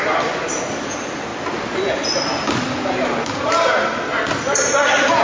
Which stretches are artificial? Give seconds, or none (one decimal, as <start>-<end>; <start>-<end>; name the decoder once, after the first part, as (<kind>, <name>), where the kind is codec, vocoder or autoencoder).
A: 0.0-1.3 (vocoder, BigVGAN v2); 4.4-5.2